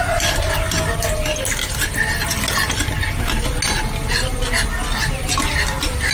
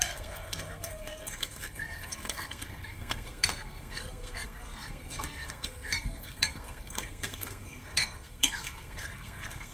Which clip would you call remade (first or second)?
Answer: second